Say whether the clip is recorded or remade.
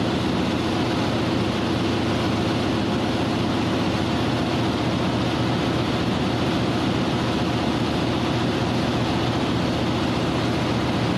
recorded